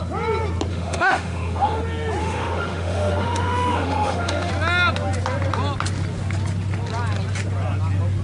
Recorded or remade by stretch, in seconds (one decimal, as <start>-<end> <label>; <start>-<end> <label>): 0.0-0.7 recorded; 0.7-1.8 remade; 1.8-2.2 recorded; 2.2-4.5 remade; 4.5-8.2 recorded